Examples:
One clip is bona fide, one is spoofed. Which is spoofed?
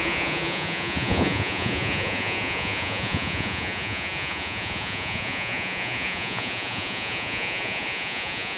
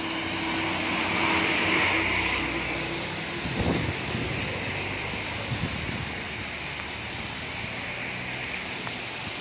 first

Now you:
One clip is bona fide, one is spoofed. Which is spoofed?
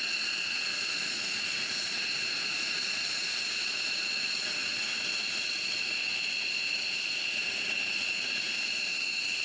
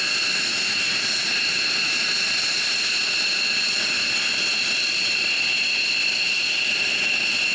first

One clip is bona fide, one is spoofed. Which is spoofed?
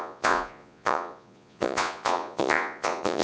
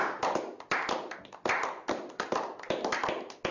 first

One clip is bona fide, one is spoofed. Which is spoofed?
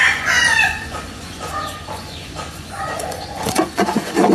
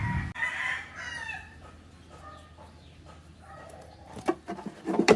first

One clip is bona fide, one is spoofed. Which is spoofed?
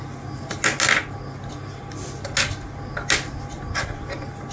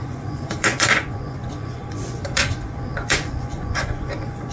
second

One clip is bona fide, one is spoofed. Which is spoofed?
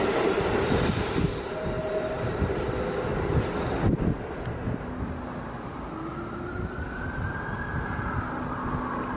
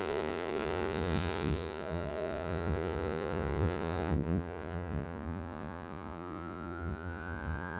second